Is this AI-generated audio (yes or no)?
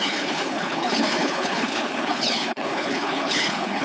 yes